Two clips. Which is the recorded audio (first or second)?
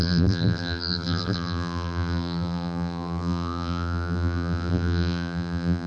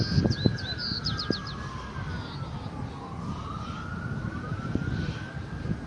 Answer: second